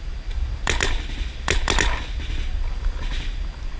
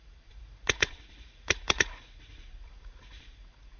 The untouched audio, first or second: first